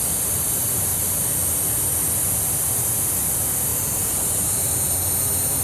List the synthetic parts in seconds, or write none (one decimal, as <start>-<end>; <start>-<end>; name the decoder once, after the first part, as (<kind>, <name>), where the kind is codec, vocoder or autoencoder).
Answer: 0.9-1.5 (vocoder, BigVGAN v2)